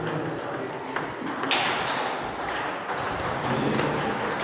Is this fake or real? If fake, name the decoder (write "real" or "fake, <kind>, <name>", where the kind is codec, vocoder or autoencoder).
real